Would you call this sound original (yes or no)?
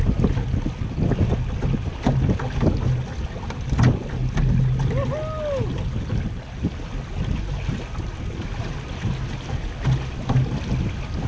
yes